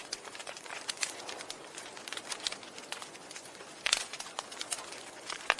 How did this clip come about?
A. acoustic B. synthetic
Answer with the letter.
B